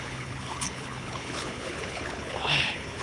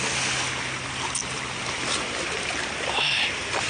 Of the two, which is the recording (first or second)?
second